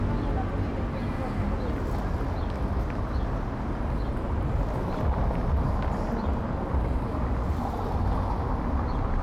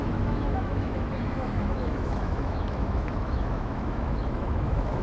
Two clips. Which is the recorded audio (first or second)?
first